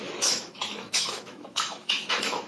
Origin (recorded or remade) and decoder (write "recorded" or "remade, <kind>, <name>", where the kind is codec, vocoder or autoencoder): remade, autoencoder, DAC-VAE